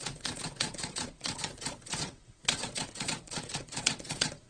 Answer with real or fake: fake